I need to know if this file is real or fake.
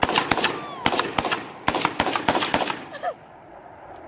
real